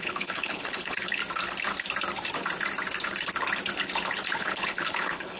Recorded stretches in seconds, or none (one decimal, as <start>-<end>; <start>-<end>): 1.2-4.4